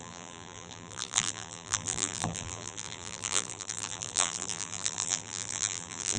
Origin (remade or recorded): remade